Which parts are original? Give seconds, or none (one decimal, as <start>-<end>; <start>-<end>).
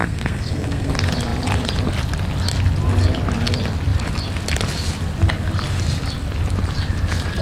0.9-7.4